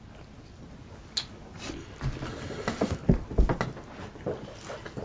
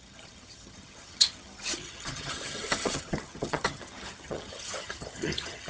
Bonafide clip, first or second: first